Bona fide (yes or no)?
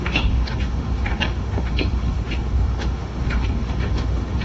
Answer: no